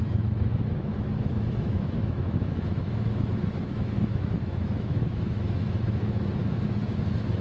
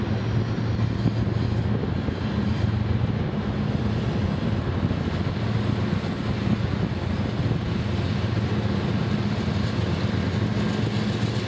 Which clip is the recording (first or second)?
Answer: second